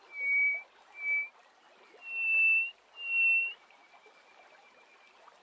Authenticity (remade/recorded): recorded